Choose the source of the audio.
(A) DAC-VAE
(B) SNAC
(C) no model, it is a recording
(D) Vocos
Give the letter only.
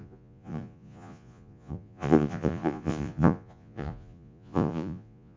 D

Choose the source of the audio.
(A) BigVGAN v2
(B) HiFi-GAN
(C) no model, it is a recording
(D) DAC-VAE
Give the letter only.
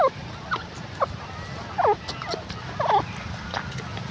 C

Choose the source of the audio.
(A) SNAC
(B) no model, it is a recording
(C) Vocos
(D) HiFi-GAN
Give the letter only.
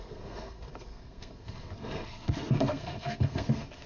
A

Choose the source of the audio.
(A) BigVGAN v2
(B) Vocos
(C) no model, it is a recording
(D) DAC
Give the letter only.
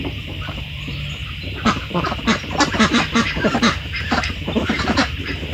A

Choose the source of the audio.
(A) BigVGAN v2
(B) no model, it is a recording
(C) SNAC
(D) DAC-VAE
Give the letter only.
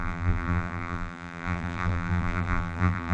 A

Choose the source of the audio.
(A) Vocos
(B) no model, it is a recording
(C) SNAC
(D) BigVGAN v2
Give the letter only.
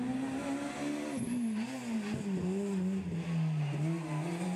B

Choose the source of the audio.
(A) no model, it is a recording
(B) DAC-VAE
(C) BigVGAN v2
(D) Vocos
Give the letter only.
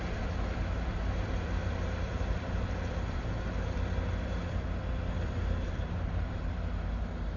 C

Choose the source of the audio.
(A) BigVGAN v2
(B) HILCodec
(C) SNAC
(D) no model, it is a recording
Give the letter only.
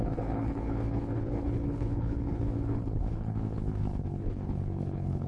B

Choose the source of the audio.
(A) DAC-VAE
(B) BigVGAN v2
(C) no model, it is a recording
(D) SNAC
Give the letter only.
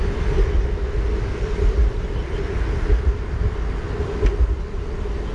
C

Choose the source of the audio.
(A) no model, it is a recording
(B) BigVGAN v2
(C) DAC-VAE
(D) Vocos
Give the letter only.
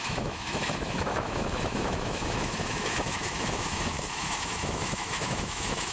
C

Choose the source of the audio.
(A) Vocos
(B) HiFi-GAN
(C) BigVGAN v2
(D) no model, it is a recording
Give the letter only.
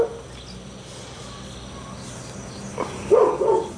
D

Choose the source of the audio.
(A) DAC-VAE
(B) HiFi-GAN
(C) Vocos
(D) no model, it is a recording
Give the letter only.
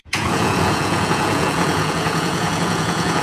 C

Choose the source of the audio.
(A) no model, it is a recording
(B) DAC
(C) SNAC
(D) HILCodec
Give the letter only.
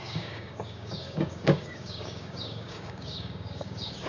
B